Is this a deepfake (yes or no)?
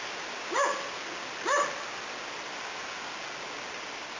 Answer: no